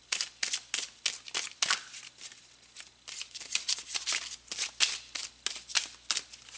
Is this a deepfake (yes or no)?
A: no